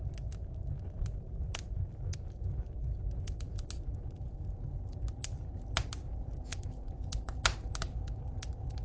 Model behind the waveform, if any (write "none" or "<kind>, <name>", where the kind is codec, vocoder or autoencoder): none